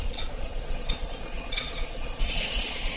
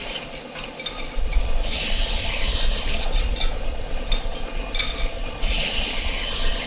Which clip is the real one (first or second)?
second